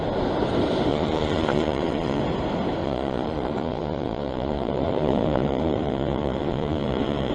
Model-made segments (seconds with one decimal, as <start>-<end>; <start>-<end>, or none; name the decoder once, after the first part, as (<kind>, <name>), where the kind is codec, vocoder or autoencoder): 0.9-2.2 (vocoder, Vocos); 2.8-7.3